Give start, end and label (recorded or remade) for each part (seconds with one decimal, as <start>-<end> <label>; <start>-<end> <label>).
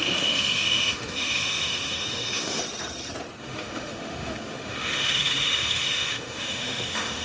0.0-2.6 remade; 2.6-3.4 recorded; 3.4-7.2 remade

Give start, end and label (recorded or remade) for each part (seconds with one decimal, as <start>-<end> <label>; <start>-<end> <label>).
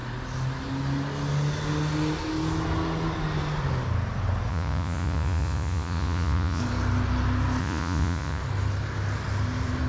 0.0-4.5 recorded; 4.5-6.6 remade; 6.6-7.6 recorded; 7.6-8.4 remade; 8.4-9.9 recorded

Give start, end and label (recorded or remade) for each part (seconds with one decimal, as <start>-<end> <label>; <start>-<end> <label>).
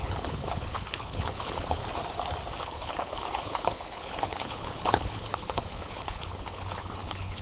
0.0-1.8 remade; 1.8-2.6 recorded; 2.6-7.4 remade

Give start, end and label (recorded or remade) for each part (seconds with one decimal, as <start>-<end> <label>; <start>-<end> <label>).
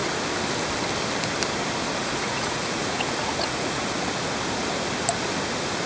0.0-2.0 recorded; 2.0-3.9 remade; 3.9-5.9 recorded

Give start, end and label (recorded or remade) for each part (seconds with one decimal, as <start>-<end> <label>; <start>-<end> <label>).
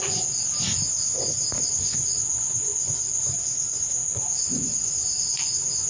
0.0-0.4 remade; 0.4-1.6 recorded; 1.6-5.9 remade